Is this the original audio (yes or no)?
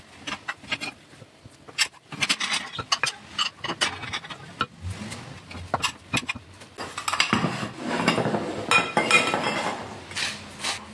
yes